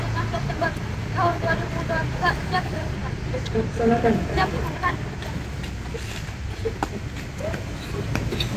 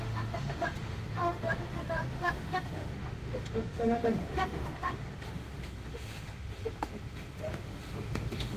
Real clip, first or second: first